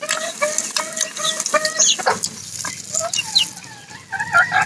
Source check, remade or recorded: recorded